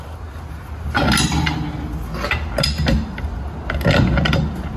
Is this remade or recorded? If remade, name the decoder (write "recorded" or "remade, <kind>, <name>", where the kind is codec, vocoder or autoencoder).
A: recorded